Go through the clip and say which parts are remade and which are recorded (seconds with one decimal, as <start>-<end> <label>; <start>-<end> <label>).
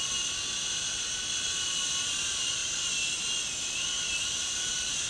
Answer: 0.0-5.1 recorded